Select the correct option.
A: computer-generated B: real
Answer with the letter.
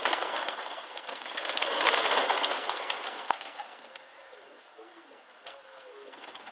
A